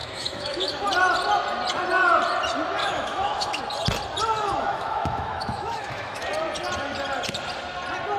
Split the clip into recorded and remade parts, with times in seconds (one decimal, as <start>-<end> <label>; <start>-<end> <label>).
0.0-0.8 remade; 0.8-2.8 recorded; 2.8-3.6 remade; 3.6-4.4 recorded; 4.4-6.3 remade; 6.3-8.2 recorded

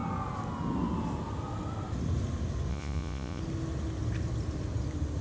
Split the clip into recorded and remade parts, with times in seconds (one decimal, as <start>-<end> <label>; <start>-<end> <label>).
0.0-2.7 recorded; 2.7-3.4 remade; 3.4-5.2 recorded